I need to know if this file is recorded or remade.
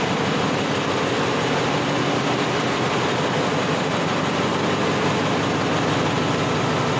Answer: recorded